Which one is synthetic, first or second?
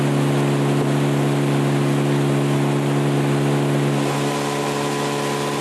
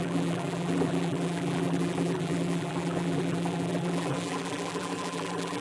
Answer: second